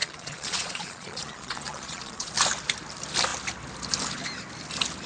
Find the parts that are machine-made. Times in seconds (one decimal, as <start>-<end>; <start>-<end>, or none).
0.0-2.3